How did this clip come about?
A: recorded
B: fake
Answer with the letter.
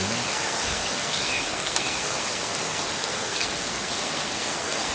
B